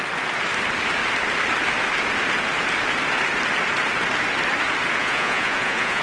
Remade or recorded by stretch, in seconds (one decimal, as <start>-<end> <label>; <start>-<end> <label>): 0.0-5.0 recorded; 5.0-6.0 remade